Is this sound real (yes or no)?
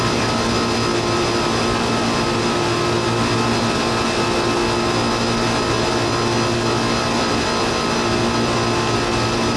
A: yes